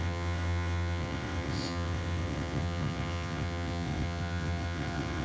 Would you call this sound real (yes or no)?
no